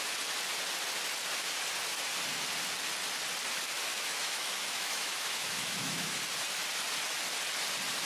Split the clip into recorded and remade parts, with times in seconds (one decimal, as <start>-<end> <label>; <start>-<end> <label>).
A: 0.0-3.9 recorded; 3.9-6.2 remade; 6.2-8.1 recorded